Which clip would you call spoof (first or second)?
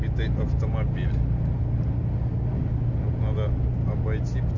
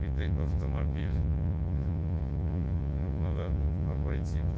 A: second